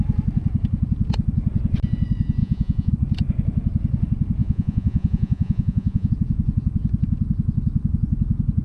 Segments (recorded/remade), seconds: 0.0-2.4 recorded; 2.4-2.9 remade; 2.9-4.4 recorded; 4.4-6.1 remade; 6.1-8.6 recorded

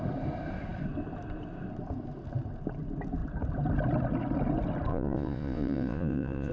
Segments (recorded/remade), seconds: 0.0-4.9 recorded; 4.9-6.5 remade

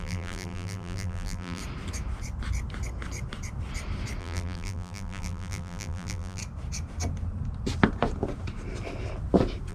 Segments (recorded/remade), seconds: 0.0-1.6 remade; 1.6-4.2 recorded; 4.2-6.4 remade; 6.4-9.7 recorded

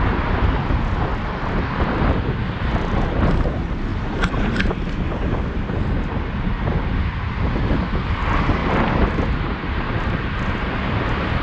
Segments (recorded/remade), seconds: 0.0-3.9 recorded; 3.9-4.7 remade; 4.7-11.4 recorded